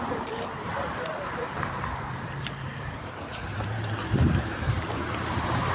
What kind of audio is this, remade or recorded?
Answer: remade